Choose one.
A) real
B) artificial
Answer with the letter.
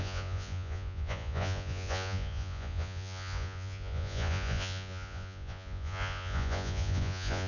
B